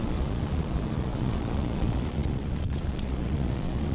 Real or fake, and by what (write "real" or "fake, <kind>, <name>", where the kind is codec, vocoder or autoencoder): fake, vocoder, Vocos